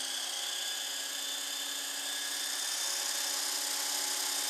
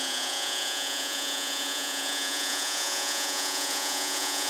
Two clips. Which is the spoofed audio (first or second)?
second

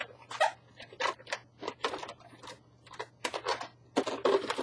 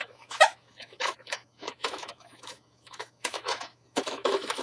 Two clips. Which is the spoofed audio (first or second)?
second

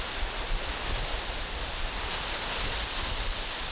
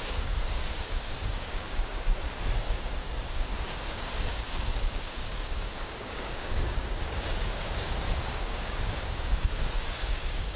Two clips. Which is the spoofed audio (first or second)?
second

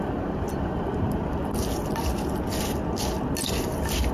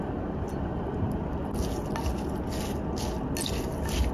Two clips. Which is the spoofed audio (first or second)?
first